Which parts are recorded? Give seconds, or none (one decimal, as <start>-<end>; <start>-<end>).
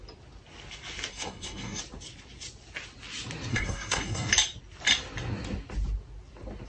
0.0-1.1; 1.8-3.5; 4.3-6.7